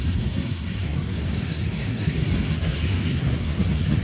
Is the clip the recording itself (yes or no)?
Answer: no